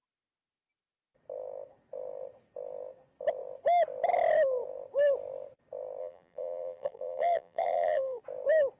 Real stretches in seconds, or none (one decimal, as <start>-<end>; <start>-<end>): 0.0-6.0; 8.2-8.8